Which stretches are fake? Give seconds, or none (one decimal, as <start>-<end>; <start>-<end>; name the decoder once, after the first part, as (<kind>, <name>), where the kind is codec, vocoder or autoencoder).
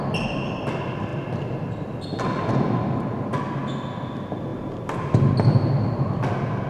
none